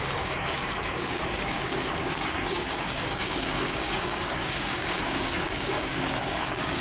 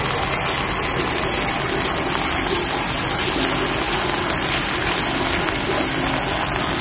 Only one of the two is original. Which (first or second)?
second